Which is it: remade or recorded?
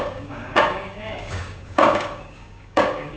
remade